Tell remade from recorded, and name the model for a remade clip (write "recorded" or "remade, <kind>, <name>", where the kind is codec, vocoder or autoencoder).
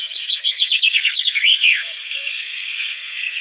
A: remade, codec, SNAC